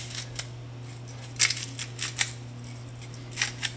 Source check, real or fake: real